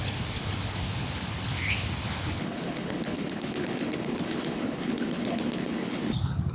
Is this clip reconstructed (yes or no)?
yes